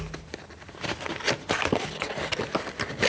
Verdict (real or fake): real